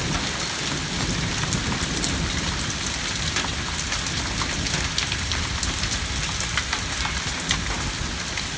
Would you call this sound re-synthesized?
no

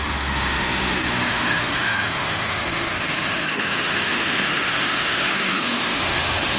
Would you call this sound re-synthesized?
yes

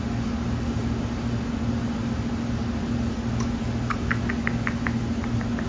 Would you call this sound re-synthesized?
no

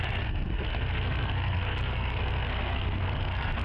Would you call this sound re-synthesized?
yes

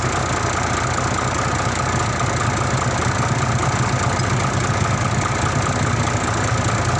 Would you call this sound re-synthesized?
no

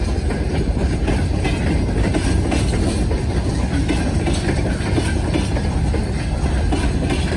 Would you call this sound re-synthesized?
no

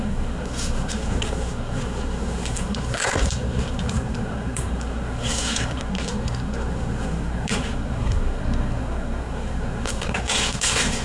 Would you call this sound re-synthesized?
yes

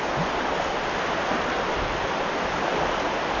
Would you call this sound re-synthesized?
no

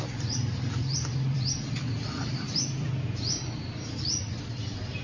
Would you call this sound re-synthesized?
yes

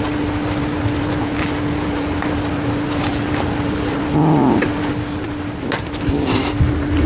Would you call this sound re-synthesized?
no